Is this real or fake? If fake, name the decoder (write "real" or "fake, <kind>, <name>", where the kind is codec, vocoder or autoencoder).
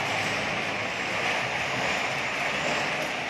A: real